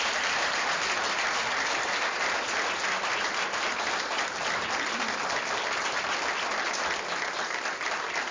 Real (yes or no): yes